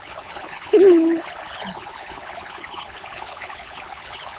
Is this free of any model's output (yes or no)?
no